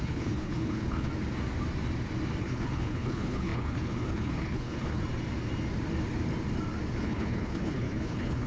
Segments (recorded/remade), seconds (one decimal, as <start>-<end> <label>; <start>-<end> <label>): 0.0-1.1 remade; 1.1-2.4 recorded; 2.4-5.0 remade; 5.0-7.0 recorded; 7.0-8.5 remade